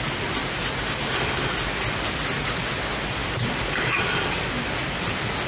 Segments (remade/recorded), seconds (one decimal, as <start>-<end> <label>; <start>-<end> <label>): 0.0-5.5 recorded